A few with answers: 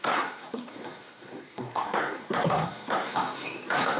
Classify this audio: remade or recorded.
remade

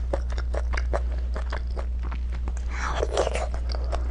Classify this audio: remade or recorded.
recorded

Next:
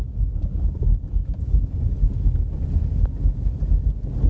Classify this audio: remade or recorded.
recorded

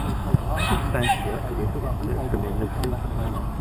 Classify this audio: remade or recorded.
remade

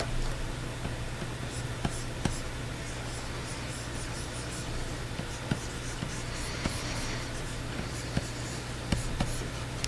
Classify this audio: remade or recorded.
recorded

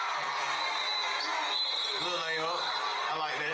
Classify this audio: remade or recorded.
recorded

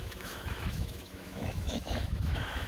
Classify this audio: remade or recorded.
remade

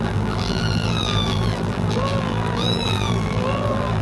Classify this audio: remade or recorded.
remade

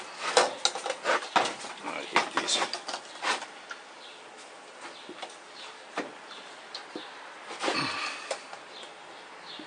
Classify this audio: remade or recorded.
recorded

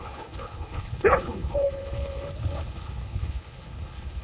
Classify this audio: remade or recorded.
remade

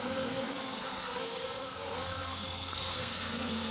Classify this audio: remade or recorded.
remade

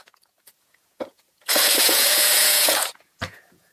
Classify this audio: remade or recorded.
remade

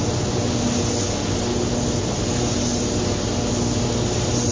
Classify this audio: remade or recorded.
recorded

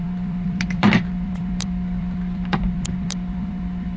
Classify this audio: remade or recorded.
remade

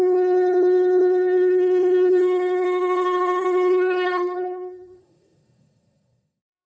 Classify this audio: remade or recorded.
remade